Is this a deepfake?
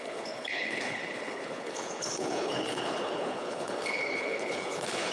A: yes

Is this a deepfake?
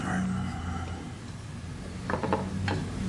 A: no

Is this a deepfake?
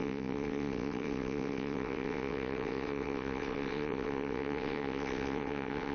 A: yes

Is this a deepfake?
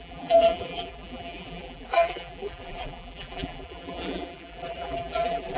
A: yes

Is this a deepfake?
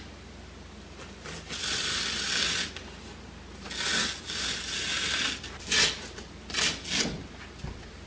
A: no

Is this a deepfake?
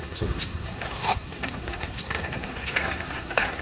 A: yes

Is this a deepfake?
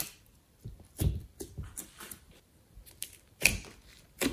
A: yes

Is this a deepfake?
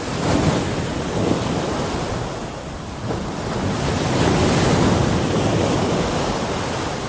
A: no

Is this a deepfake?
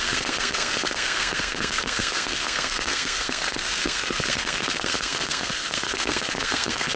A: yes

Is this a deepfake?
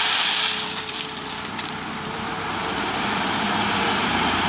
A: yes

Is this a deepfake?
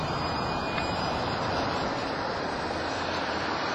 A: yes